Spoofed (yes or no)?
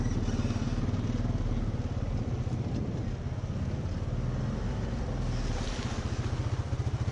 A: no